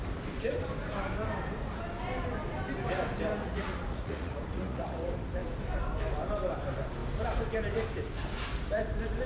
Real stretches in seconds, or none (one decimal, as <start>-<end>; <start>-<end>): 0.0-3.4; 5.1-9.3